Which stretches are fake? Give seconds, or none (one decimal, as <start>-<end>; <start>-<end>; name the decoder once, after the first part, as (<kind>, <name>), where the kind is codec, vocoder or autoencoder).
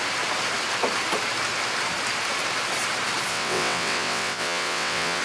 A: 3.3-5.2 (vocoder, WaveNeXt)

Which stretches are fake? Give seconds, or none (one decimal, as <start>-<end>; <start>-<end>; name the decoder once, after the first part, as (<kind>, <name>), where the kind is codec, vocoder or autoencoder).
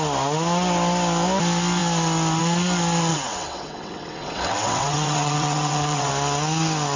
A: 3.1-6.1 (vocoder, WaveNeXt)